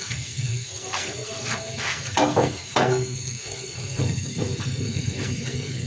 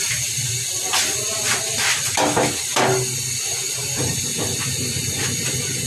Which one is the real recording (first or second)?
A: second